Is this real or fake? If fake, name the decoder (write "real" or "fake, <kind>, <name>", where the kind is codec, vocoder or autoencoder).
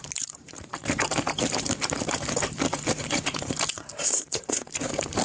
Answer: fake, vocoder, BigVGAN v2